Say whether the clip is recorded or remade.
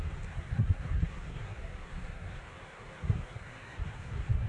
remade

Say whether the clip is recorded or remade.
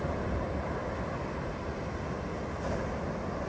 recorded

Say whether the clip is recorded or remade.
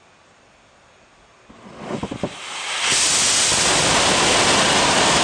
recorded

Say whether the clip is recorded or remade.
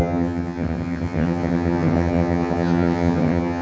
remade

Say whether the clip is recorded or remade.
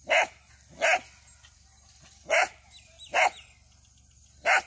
recorded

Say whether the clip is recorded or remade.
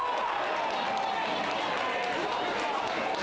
recorded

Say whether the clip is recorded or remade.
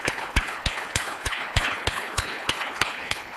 remade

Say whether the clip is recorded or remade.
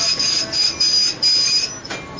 recorded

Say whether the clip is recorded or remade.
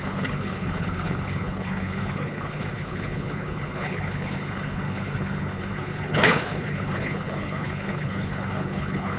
remade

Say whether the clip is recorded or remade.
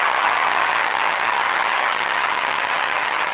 remade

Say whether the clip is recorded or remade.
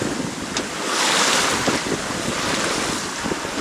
recorded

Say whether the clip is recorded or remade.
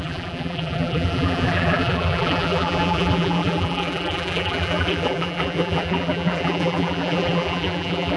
remade